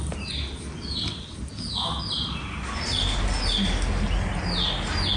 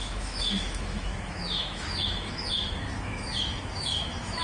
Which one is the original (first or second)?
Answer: first